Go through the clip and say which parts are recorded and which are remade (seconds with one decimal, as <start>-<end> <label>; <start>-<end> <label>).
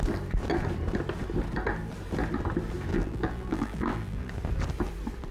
0.0-2.9 recorded; 2.9-4.3 remade; 4.3-5.3 recorded